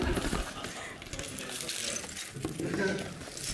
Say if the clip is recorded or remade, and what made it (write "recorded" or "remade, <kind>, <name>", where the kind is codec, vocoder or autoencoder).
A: recorded